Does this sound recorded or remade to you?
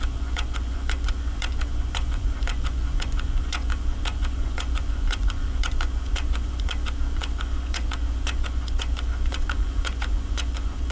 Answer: remade